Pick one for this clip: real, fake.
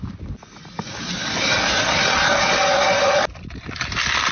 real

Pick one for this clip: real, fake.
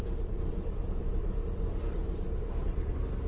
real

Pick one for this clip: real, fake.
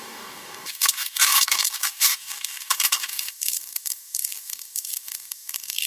fake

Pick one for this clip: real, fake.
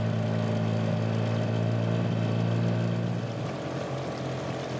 real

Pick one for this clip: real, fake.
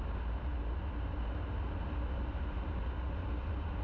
real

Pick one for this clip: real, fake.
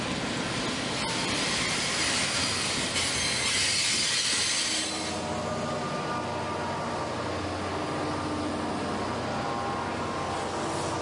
real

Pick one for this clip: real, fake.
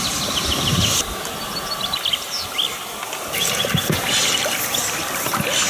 real